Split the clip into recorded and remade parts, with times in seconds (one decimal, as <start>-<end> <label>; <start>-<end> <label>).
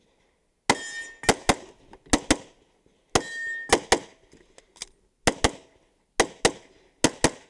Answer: 0.0-7.5 recorded